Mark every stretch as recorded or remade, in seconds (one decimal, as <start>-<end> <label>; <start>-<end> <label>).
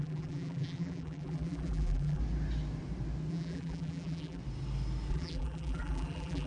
0.0-2.2 remade; 2.2-3.3 recorded; 3.3-4.4 remade; 4.4-5.1 recorded; 5.1-6.5 remade